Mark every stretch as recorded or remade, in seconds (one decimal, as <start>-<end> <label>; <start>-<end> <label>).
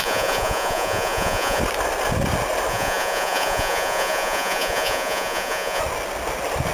0.0-1.6 remade; 1.6-2.7 recorded; 2.7-5.8 remade; 5.8-6.7 recorded